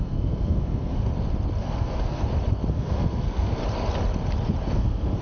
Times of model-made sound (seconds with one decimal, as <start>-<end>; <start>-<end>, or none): 0.0-1.1; 1.6-2.2; 2.7-3.6; 4.7-5.2